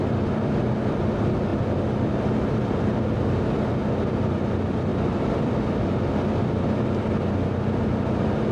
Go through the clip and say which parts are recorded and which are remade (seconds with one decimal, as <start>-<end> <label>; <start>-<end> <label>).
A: 0.0-8.5 recorded